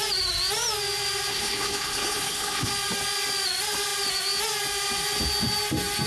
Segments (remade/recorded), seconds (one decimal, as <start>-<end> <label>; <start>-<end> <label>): 0.0-1.3 recorded; 1.3-2.7 remade; 2.7-6.1 recorded

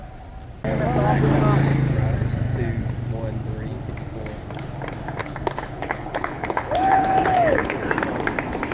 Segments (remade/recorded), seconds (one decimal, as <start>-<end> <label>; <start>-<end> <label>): 0.0-5.2 recorded; 5.2-7.9 remade; 7.9-8.7 recorded

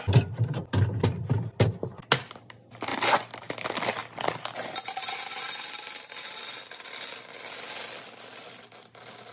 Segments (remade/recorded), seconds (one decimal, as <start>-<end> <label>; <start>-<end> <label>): 0.0-9.3 recorded

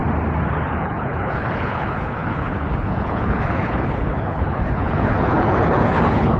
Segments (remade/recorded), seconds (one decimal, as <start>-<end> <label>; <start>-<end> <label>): 0.0-0.5 recorded; 0.5-6.4 remade

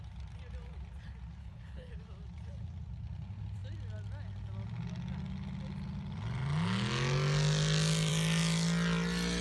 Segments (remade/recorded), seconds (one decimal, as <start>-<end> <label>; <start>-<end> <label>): 0.0-1.4 recorded; 1.4-1.9 remade; 1.9-9.4 recorded